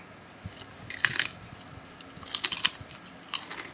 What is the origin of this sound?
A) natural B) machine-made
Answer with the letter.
A